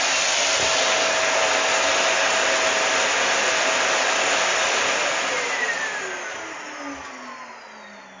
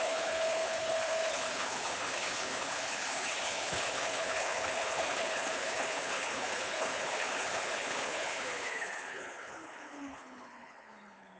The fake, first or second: second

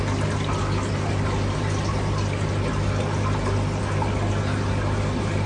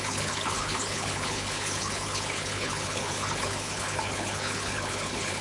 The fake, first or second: second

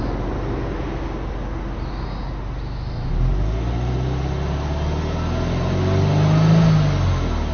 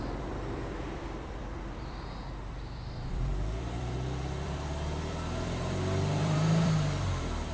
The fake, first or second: second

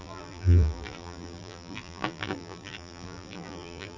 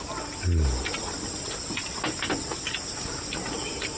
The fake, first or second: first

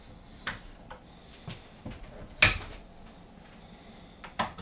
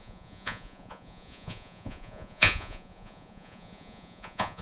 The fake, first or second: second